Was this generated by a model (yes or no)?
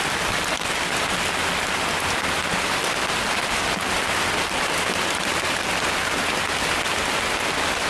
no